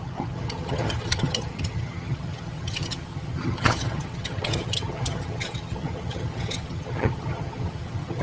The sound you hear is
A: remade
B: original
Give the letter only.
A